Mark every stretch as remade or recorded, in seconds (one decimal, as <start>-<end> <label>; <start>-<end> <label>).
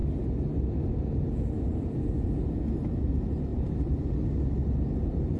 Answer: 0.0-3.5 recorded; 3.5-4.0 remade; 4.0-5.4 recorded